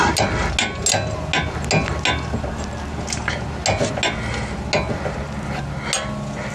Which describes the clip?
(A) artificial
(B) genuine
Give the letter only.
B